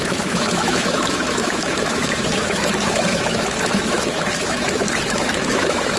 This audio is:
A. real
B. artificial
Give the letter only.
B